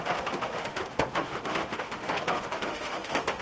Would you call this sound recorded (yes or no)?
no